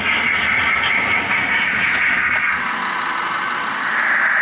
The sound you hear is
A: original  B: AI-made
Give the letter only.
A